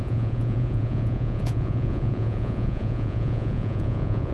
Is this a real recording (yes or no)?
no